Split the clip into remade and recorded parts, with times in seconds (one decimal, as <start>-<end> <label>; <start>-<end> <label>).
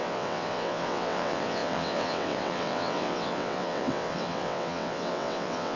0.0-5.8 remade